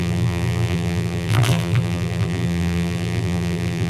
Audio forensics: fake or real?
fake